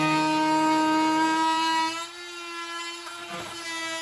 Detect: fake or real real